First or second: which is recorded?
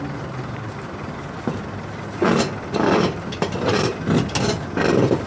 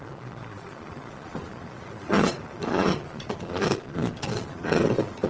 first